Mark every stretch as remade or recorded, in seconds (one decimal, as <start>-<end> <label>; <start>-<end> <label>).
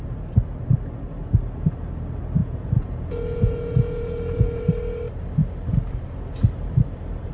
0.0-2.4 recorded; 2.4-4.6 remade; 4.6-7.3 recorded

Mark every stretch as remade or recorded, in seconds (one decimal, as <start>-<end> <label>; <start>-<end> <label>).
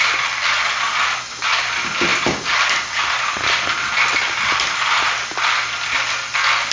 0.0-6.7 recorded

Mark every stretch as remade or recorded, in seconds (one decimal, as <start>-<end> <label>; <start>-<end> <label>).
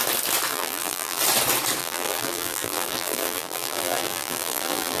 0.0-0.5 recorded; 0.5-1.2 remade; 1.2-1.8 recorded; 1.8-5.0 remade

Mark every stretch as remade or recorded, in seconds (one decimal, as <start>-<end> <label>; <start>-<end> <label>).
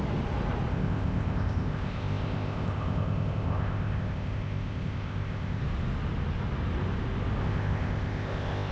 0.0-0.7 recorded; 0.7-5.6 remade; 5.6-7.4 recorded; 7.4-8.7 remade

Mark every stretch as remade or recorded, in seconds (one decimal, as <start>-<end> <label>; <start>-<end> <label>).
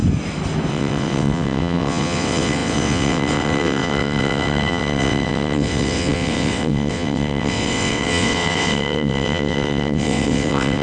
0.0-0.7 recorded; 0.7-10.8 remade